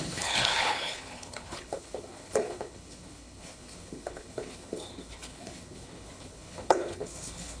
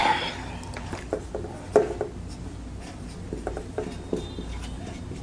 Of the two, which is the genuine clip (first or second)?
second